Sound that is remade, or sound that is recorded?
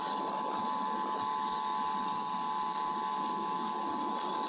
recorded